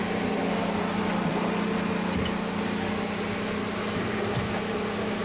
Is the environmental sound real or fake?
real